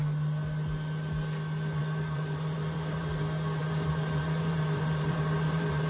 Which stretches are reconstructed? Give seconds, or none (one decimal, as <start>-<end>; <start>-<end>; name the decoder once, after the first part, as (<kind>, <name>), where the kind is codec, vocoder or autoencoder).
1.8-3.2 (vocoder, BigVGAN v2); 3.6-5.9